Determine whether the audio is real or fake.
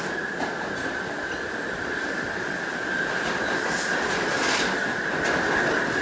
real